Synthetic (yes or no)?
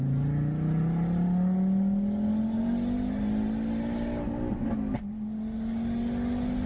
no